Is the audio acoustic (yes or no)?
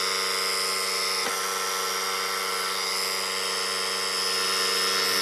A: yes